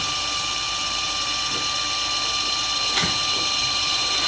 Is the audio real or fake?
fake